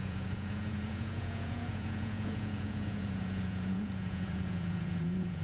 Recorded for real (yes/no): no